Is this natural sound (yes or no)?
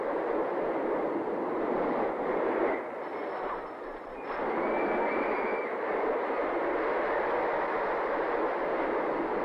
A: yes